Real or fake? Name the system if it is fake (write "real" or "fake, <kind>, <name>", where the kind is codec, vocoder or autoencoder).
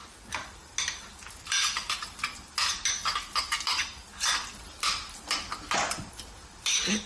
real